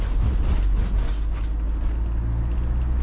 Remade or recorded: recorded